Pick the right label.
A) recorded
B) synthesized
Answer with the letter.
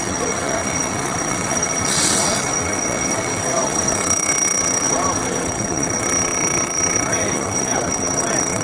B